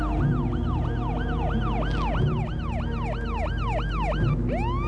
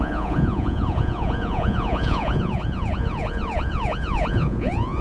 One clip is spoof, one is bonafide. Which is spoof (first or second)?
second